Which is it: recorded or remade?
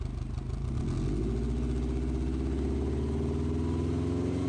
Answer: recorded